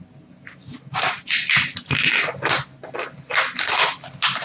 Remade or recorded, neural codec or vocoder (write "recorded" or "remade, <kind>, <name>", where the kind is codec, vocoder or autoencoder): recorded